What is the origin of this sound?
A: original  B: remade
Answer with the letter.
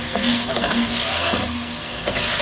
B